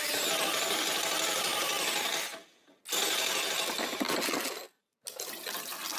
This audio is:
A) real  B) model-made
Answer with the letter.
A